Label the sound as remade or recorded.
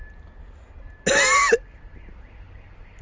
recorded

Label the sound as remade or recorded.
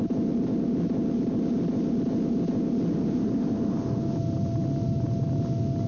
recorded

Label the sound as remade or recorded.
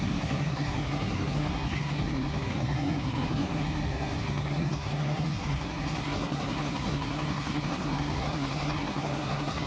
remade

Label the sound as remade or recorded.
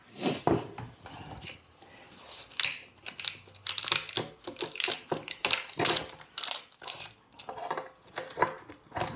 recorded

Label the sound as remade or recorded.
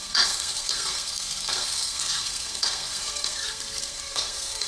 remade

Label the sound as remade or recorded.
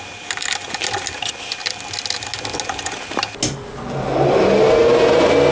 recorded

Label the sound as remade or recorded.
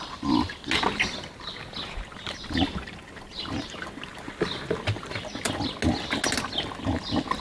recorded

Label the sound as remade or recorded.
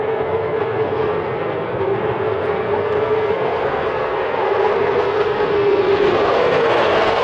remade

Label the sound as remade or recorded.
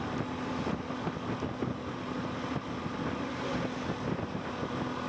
recorded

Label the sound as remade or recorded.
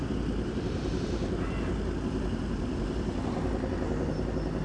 recorded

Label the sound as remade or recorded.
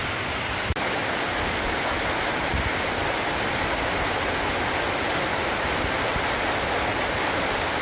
recorded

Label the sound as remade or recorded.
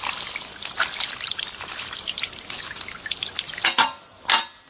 recorded